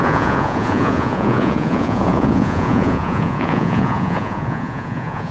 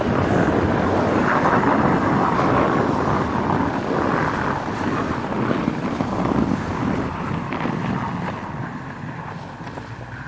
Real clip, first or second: second